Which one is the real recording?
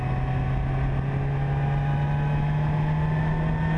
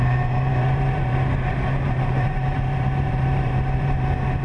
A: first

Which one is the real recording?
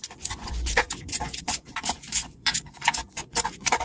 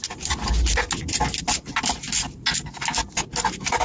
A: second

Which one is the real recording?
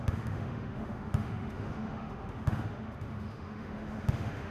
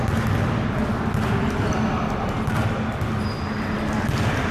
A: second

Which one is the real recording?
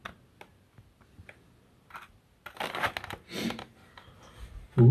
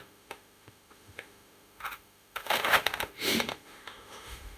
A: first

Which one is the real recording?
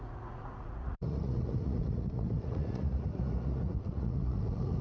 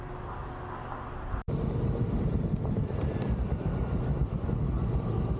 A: second